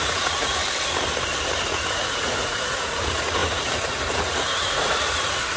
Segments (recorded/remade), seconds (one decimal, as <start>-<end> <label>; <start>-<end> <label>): 0.0-0.6 remade; 0.6-1.6 recorded; 1.6-5.6 remade